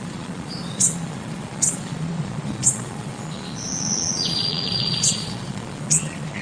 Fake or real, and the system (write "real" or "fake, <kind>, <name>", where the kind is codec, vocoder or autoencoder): fake, vocoder, Vocos